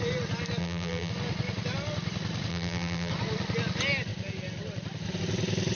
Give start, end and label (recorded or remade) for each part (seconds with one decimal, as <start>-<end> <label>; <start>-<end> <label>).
0.0-0.6 recorded; 0.6-1.1 remade; 1.1-2.5 recorded; 2.5-3.1 remade; 3.1-5.7 recorded